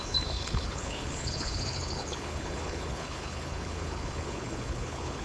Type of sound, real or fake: fake